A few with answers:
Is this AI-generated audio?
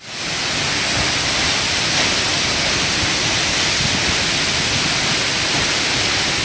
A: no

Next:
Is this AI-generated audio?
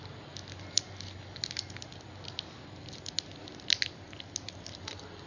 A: no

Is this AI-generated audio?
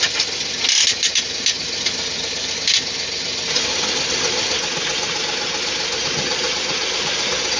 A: no